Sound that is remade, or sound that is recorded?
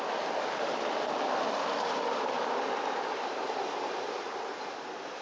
recorded